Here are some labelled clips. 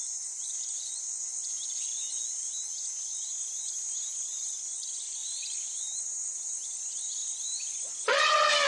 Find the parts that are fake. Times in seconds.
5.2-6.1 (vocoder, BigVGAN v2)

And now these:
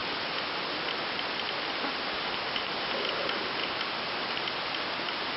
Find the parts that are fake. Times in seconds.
none

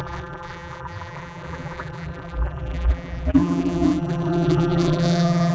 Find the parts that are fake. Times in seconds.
0.0-5.5 (vocoder, BigVGAN v2)

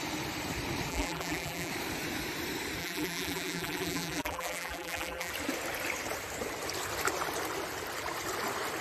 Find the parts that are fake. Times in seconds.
0.9-1.7 (vocoder, BigVGAN v2); 2.8-5.3

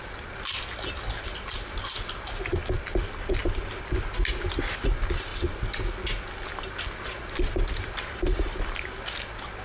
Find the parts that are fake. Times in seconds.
none

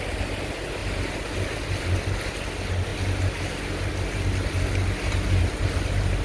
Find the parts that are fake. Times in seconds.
none

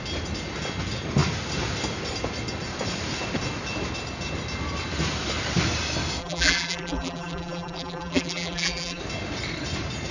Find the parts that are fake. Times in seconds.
6.2-9.0 (vocoder, BigVGAN v2)